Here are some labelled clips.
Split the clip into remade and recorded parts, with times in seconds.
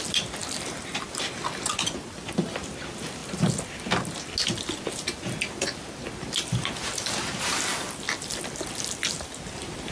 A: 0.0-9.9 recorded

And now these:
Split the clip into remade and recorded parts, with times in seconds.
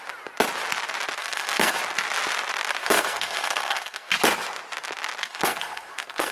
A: 0.0-1.2 recorded; 1.2-1.8 remade; 1.8-2.8 recorded; 2.8-4.1 remade; 4.1-5.2 recorded; 5.2-6.3 remade